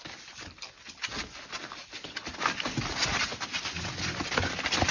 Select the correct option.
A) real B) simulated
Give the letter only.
A